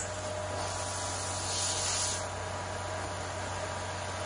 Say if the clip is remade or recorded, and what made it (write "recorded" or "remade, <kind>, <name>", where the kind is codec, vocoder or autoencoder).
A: recorded